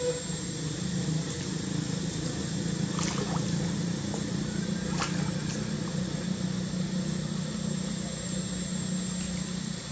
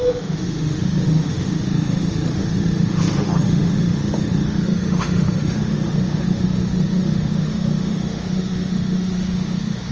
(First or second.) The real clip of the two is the first